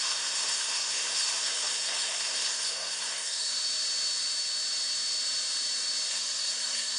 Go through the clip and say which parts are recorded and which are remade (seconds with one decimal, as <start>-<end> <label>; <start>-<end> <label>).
0.0-3.6 remade; 3.6-6.1 recorded; 6.1-7.0 remade